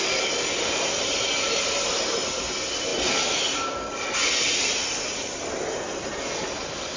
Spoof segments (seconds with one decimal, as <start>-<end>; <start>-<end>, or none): none

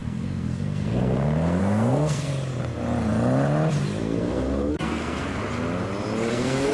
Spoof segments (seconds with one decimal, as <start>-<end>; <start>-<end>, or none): 0.0-2.3; 4.0-5.4; 6.3-6.7